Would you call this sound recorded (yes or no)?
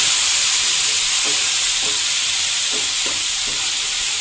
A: yes